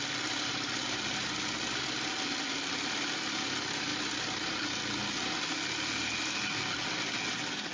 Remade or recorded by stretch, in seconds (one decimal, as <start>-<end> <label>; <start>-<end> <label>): 0.0-7.7 recorded

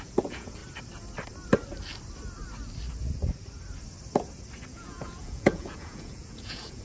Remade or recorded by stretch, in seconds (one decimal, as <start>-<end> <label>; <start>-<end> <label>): 0.0-0.6 remade; 0.6-4.7 recorded; 4.7-6.8 remade

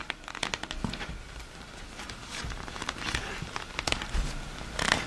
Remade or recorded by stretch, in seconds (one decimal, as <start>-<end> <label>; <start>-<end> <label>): 0.0-5.1 recorded